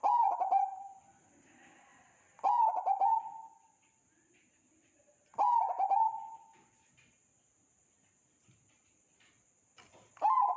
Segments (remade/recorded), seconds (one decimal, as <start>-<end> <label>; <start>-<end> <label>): 0.0-10.6 recorded